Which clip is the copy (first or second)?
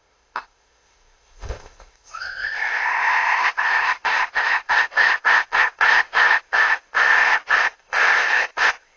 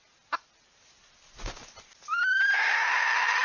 first